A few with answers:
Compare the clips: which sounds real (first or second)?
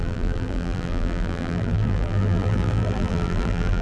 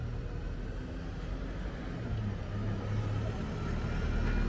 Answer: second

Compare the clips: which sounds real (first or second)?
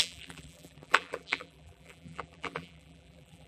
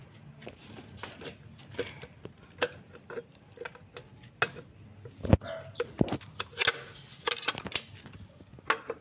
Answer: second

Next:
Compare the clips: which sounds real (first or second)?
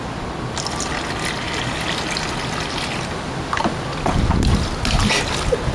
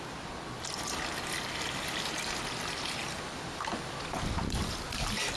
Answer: first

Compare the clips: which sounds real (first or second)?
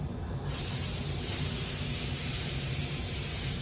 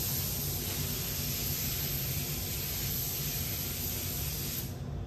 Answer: second